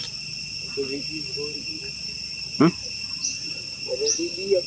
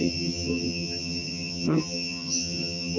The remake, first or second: second